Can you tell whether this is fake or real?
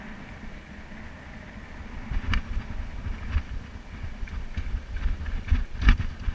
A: real